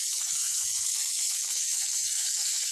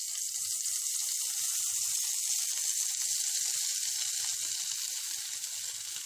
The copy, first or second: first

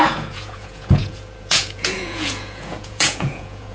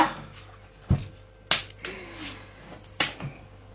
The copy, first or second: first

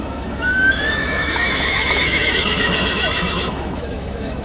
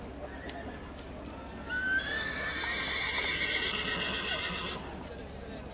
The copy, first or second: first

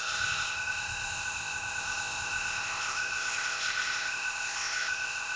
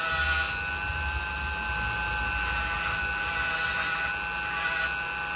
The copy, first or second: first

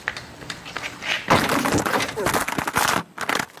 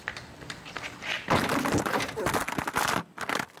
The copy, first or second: second